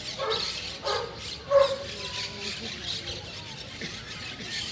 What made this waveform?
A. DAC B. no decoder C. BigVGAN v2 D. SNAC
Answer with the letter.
B